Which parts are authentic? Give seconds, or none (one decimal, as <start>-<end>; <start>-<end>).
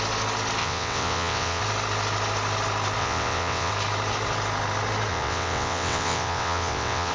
0.0-0.6; 1.6-3.0; 3.7-5.1